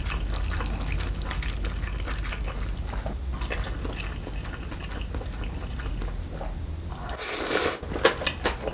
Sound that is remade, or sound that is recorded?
recorded